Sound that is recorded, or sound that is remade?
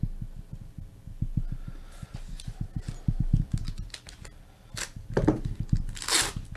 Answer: recorded